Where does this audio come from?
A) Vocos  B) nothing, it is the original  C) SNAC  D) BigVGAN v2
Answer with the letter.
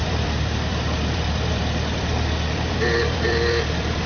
D